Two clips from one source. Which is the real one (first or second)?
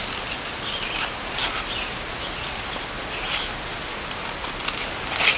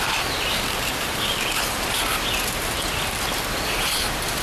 first